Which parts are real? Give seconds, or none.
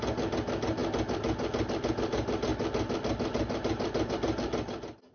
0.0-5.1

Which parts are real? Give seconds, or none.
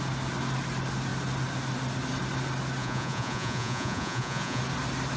0.0-2.8; 4.6-5.2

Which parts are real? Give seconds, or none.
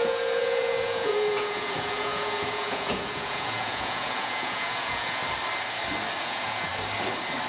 5.2-6.2; 6.7-7.5